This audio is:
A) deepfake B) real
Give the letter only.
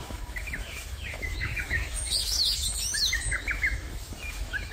A